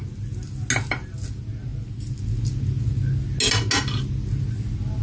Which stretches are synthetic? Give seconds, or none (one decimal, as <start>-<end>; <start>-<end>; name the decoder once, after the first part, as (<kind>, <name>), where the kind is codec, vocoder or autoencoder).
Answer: none